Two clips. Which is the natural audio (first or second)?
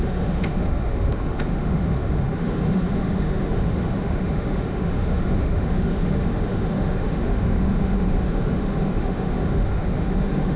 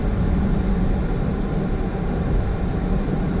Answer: second